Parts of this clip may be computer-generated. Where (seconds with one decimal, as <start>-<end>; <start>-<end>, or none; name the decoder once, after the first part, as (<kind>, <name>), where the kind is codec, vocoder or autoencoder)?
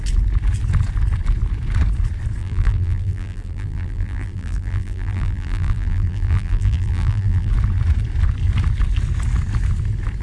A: 2.4-7.5 (vocoder, BigVGAN v2)